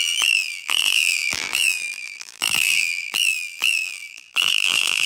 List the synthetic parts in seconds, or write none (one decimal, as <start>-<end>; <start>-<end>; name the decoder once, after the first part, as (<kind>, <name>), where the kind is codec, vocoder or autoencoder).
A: 0.0-5.1 (vocoder, BigVGAN v2)